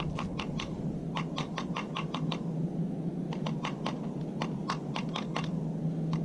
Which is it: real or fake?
real